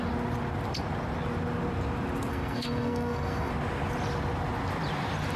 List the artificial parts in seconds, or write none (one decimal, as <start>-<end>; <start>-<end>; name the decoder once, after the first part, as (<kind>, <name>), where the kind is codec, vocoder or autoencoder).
2.3-3.5 (codec, SNAC)